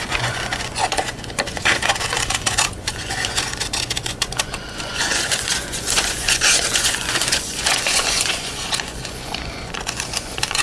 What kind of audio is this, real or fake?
fake